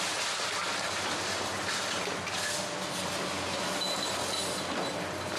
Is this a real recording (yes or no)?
yes